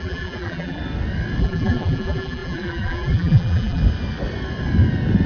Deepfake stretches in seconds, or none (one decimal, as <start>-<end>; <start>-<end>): 0.0-0.8; 1.4-3.8